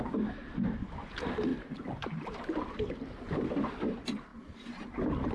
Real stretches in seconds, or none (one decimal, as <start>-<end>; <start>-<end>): 0.0-1.5; 2.9-5.3